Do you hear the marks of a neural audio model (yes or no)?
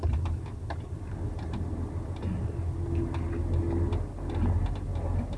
no